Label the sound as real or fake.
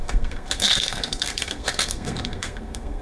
fake